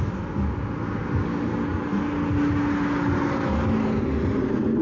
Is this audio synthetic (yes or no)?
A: no